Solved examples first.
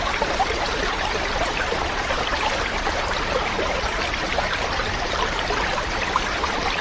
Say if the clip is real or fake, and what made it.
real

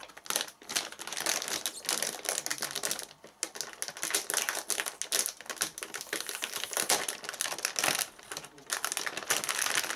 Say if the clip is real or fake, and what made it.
real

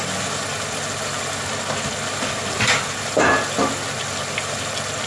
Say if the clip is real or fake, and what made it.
real